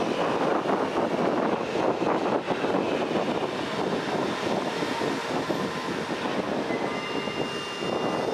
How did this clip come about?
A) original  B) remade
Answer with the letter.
A